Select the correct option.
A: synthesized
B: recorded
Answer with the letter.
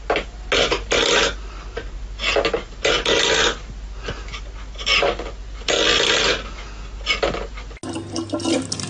B